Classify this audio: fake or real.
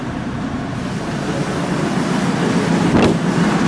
real